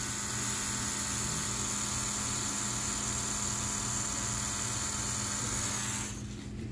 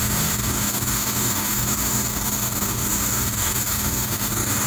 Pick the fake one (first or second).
second